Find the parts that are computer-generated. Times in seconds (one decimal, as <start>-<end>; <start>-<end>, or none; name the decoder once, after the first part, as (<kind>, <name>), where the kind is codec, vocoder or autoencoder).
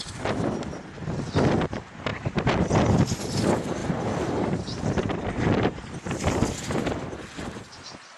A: 2.1-2.6 (vocoder, BigVGAN v2); 3.8-6.5